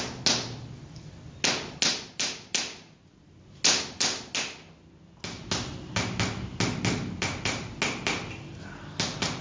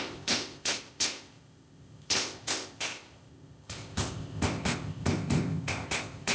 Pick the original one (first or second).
first